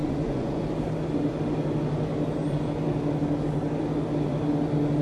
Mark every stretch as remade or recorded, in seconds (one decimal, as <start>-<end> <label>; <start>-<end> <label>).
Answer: 0.0-0.6 remade; 0.6-5.0 recorded